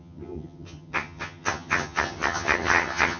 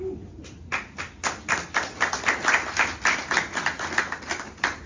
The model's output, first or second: first